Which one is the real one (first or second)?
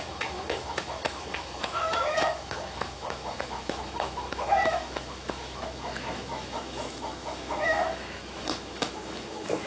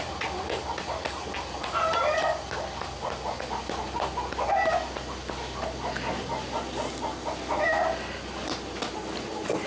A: second